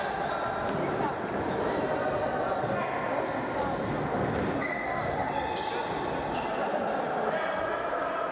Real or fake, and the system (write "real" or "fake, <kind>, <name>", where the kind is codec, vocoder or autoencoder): real